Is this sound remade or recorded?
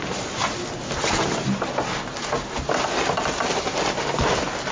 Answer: recorded